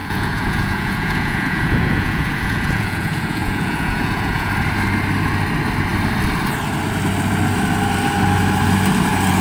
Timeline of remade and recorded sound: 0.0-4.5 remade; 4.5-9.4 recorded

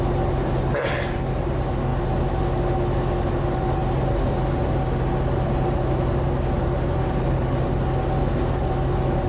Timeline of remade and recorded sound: 0.0-9.3 recorded